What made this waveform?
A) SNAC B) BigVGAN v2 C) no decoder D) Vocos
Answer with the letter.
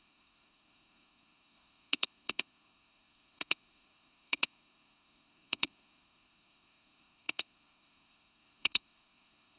A